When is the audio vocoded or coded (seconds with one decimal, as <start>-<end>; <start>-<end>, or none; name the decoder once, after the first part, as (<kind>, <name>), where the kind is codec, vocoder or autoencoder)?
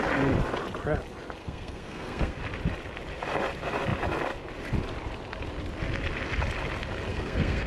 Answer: 1.4-2.4 (codec, SNAC); 7.1-7.7